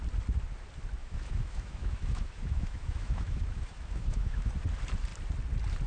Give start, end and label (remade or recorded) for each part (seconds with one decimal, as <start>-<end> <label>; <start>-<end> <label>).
0.0-1.0 recorded; 1.0-4.5 remade; 4.5-5.9 recorded